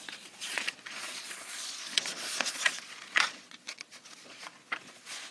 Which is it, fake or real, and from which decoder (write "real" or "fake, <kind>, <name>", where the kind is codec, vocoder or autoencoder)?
fake, vocoder, Vocos